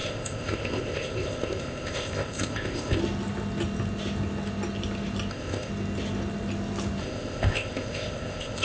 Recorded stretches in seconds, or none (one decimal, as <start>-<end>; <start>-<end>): 3.0-5.3; 5.7-7.0